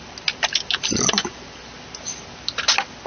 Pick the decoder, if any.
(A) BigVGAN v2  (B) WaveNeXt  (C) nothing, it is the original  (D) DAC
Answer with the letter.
C